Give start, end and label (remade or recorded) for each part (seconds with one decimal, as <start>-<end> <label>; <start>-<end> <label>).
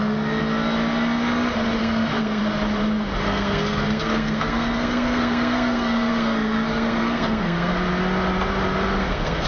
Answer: 0.0-0.4 remade; 0.4-1.8 recorded; 1.8-2.4 remade; 2.4-3.2 recorded; 3.2-7.7 remade; 7.7-9.0 recorded; 9.0-9.5 remade